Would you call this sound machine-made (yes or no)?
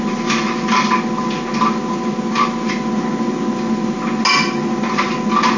no